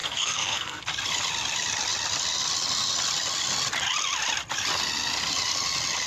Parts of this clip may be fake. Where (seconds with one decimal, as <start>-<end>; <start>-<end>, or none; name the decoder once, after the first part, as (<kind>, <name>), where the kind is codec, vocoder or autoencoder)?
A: 0.0-0.8 (codec, SNAC)